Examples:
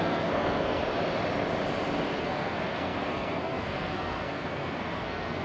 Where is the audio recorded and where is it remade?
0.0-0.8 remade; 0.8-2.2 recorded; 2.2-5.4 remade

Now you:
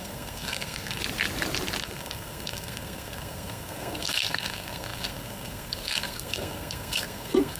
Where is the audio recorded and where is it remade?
0.0-1.0 remade; 1.0-1.8 recorded; 1.8-7.6 remade

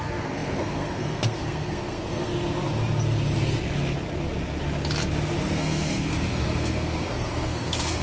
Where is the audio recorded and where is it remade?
0.0-2.3 remade; 2.3-5.5 recorded; 5.5-8.0 remade

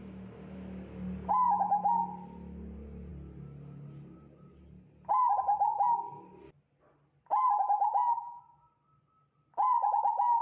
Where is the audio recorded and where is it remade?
0.0-10.4 recorded